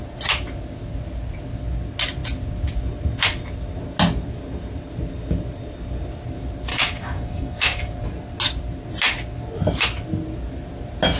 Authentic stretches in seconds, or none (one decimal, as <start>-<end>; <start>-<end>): 0.0-6.7; 8.0-11.2